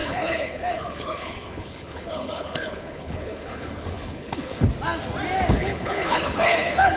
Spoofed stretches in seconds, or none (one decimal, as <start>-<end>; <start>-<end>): 0.0-4.7; 5.5-7.0